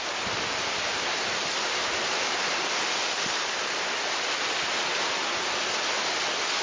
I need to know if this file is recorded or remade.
recorded